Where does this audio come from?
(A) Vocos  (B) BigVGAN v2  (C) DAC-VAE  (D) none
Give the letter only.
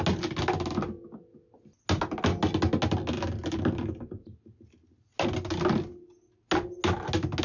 D